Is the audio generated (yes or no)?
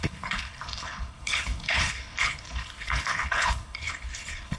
yes